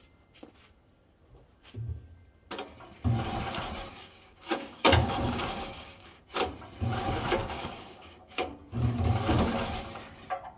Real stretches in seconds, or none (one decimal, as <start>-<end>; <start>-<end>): 0.0-3.9; 6.2-7.4; 8.5-10.6